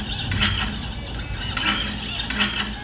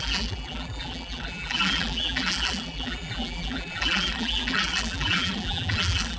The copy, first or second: second